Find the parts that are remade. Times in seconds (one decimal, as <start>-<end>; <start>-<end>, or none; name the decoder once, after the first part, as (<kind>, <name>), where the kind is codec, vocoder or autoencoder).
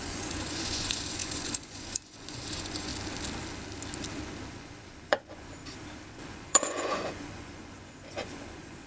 0.0-2.9 (vocoder, Vocos); 4.5-5.6; 6.1-8.9